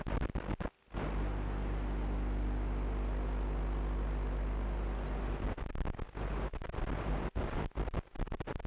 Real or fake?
real